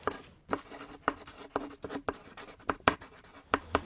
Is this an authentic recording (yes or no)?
yes